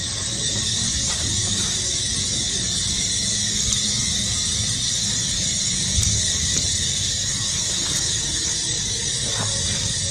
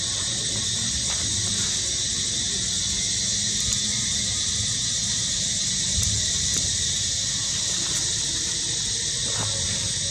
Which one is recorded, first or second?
second